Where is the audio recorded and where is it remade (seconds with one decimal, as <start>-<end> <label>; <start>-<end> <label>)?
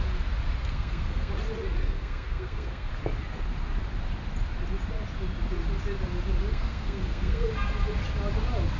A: 0.0-0.6 recorded; 0.6-1.3 remade; 1.3-1.8 recorded; 1.8-2.9 remade; 2.9-6.5 recorded; 6.5-7.5 remade; 7.5-8.8 recorded